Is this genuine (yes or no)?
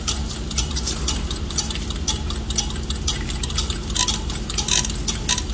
yes